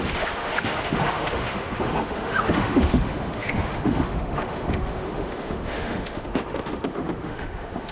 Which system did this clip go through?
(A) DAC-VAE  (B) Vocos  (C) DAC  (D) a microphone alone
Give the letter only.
A